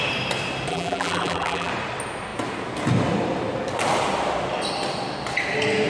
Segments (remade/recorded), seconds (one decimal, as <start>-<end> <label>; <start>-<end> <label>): 0.0-0.7 recorded; 0.7-1.7 remade; 1.7-5.9 recorded